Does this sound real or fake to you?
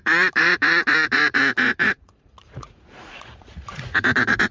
fake